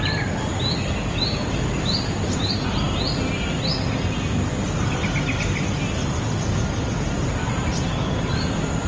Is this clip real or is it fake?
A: real